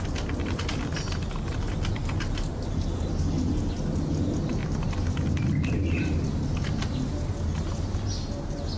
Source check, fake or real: real